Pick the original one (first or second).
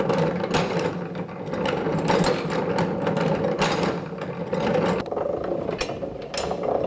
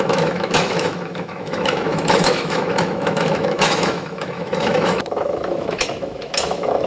first